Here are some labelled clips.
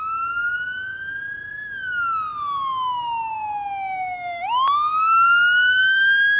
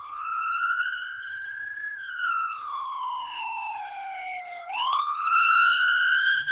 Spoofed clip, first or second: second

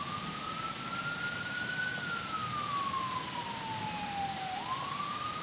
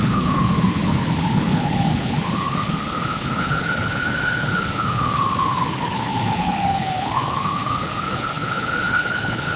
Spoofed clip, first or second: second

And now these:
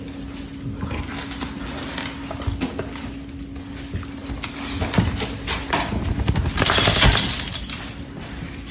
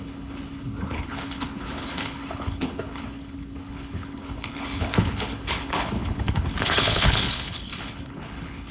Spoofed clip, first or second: second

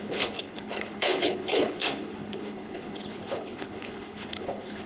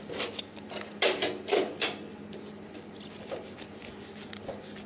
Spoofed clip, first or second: first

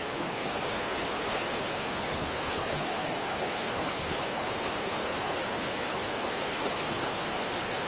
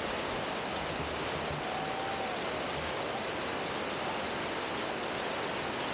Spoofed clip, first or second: first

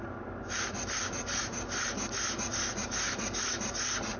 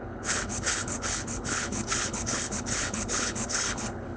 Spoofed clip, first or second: second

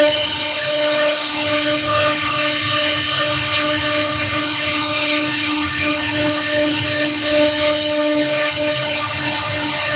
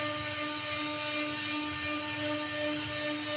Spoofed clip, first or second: first